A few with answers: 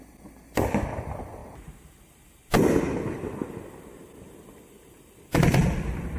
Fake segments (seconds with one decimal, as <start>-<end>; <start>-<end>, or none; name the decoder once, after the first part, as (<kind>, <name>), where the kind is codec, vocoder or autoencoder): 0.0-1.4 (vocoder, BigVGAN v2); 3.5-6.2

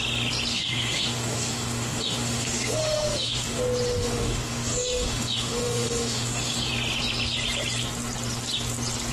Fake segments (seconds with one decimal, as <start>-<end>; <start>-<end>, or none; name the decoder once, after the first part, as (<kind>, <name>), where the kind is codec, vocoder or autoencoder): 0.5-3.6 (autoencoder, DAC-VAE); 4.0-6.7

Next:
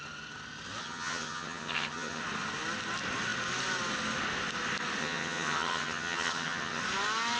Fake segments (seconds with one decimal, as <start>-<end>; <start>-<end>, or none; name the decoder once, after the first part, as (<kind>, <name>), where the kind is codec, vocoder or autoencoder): 0.8-2.2 (vocoder, HiFi-GAN); 5.0-6.8